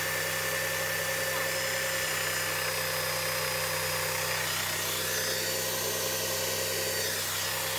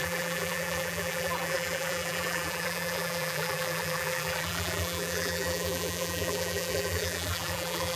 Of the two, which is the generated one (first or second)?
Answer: second